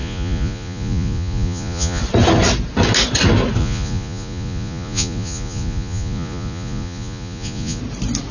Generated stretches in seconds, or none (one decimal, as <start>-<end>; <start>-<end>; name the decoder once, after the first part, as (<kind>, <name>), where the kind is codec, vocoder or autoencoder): 0.0-2.0 (vocoder, Vocos); 3.6-7.8